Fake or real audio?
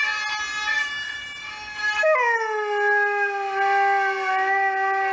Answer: real